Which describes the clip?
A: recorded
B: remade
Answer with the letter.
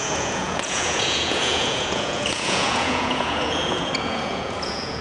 B